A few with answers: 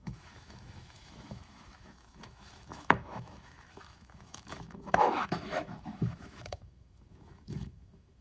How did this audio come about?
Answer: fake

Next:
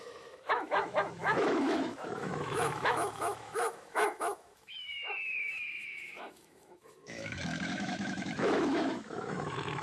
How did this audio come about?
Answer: fake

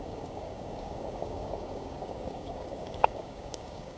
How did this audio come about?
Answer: fake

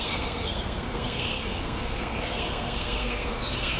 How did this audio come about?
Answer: fake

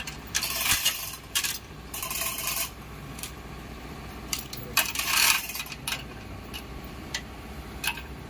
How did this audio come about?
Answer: fake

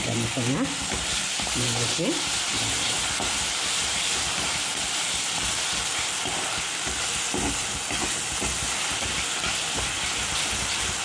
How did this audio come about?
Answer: real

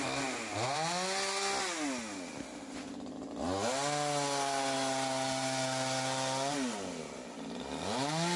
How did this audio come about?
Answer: real